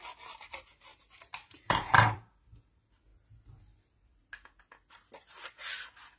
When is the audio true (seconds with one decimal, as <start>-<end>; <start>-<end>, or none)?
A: 0.0-0.9; 2.3-6.2